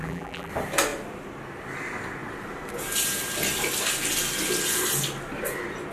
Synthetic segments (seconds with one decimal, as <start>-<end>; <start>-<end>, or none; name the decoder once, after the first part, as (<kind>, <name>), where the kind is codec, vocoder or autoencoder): 0.0-0.5 (vocoder, BigVGAN v2)